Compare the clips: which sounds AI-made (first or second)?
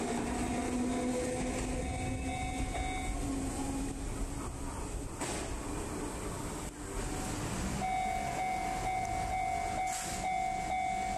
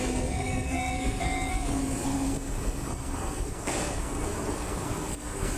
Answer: second